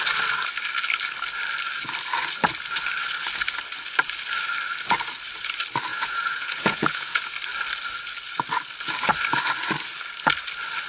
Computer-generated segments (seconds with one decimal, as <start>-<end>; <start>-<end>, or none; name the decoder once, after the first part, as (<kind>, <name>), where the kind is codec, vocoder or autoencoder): 5.9-7.2 (vocoder, Vocos)